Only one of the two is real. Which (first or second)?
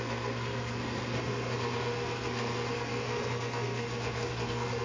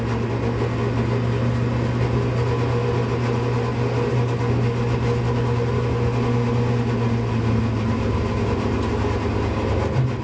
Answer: second